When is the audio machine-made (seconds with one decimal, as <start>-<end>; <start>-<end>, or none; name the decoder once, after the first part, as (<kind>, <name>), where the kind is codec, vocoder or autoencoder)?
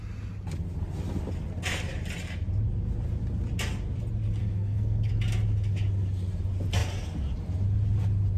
4.4-5.1 (codec, SNAC)